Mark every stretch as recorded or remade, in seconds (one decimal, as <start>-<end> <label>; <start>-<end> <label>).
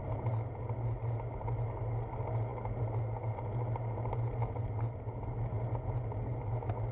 0.0-6.9 recorded